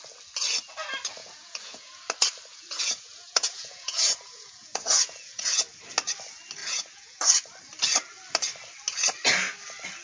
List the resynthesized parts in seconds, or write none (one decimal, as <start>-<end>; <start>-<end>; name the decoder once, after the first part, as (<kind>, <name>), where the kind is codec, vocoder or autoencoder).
1.2-2.0 (vocoder, Vocos); 2.5-5.8; 6.6-7.2